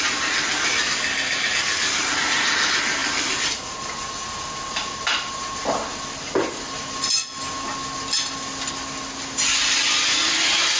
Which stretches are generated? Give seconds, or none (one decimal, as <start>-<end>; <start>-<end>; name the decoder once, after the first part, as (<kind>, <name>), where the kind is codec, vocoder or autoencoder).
none